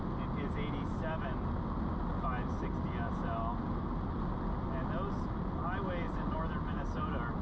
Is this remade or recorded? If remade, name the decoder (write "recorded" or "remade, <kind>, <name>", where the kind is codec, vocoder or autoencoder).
recorded